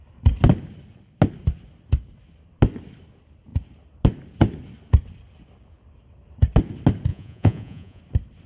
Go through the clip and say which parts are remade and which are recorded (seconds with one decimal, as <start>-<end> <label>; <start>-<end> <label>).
0.0-7.1 recorded; 7.1-8.0 remade; 8.0-8.5 recorded